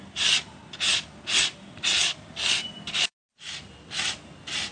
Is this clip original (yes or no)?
yes